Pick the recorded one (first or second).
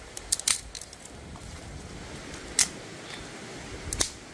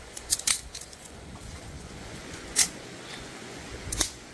first